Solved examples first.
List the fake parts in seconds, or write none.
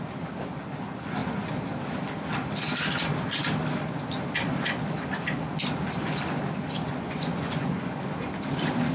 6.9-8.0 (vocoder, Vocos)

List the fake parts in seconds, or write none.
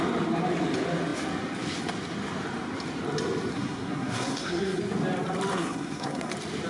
3.5-4.8 (codec, SNAC); 5.5-6.3